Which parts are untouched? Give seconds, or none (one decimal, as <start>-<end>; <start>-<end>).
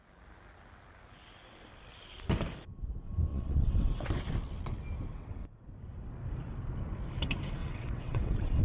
0.0-3.3; 4.1-5.1; 5.7-7.6